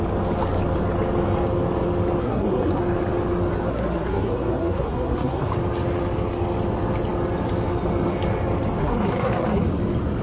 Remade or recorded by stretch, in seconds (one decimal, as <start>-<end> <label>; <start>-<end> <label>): 0.0-2.2 recorded; 2.2-2.8 remade; 2.8-3.7 recorded; 3.7-5.5 remade; 5.5-8.8 recorded; 8.8-9.7 remade; 9.7-10.2 recorded